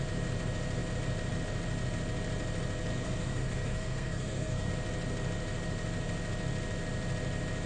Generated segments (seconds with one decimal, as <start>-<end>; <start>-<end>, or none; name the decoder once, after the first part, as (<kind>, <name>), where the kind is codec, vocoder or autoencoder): 2.9-4.7 (codec, SNAC)

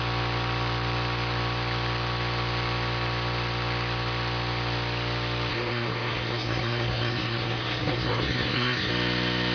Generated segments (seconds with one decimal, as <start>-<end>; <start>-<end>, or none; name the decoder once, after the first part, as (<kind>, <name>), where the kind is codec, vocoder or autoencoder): 5.5-8.9 (codec, SNAC)

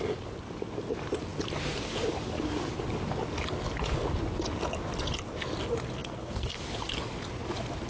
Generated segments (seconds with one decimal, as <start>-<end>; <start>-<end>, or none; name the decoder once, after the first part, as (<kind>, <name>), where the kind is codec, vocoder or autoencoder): 6.0-6.6 (codec, SNAC)

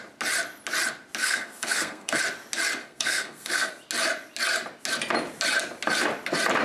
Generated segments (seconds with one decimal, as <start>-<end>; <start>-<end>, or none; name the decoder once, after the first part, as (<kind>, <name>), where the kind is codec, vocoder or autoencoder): 1.2-2.2 (codec, SNAC); 2.8-3.7